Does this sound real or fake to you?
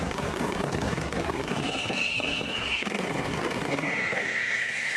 fake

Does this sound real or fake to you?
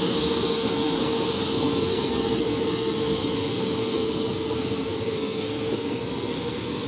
fake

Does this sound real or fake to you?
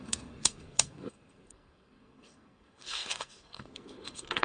fake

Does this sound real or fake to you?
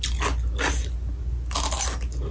real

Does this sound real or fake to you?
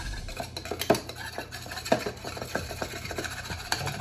real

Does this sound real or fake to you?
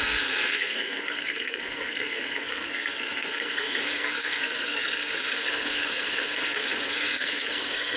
fake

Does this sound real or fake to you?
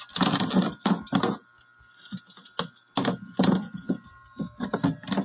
real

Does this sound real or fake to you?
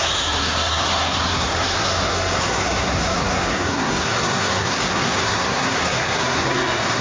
fake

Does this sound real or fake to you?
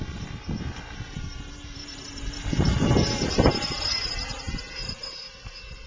fake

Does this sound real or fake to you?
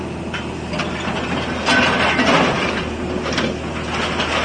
real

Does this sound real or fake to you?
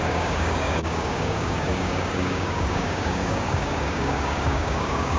fake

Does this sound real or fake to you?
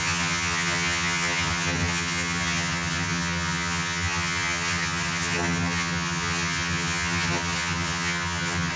fake